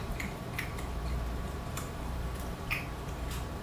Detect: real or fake fake